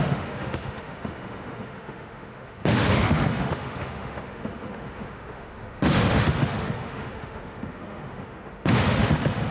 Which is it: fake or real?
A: fake